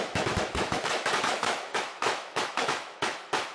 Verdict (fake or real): fake